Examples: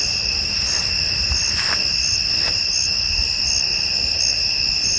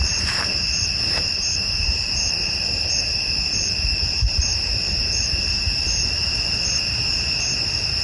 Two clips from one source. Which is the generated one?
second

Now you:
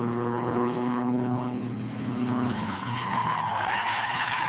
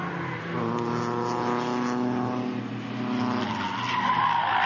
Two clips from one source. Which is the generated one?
first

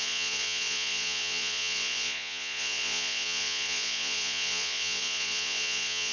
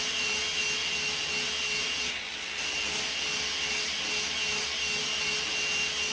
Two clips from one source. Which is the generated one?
first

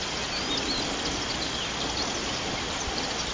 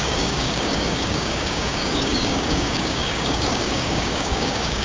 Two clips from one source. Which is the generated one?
second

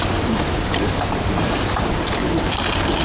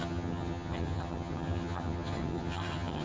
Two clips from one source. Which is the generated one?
second